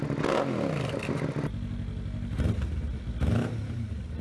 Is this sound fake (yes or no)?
no